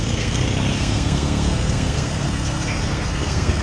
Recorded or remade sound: remade